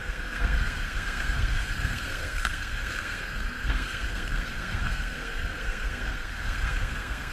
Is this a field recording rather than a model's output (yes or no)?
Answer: no